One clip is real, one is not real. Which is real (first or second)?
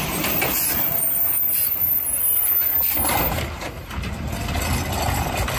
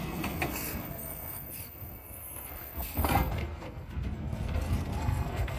first